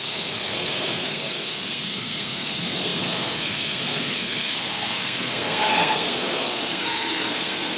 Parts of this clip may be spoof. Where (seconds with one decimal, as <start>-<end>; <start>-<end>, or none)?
0.0-7.8